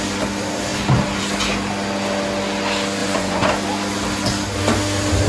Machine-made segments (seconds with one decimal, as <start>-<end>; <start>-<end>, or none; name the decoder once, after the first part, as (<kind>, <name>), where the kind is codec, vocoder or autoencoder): 3.0-3.5 (vocoder, Vocos)